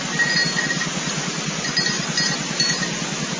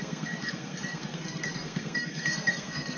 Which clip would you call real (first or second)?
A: first